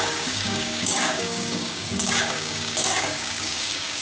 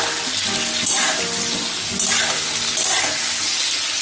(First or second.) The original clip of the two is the second